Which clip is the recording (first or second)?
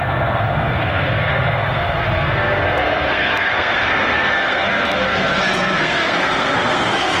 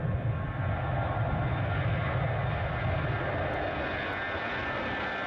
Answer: second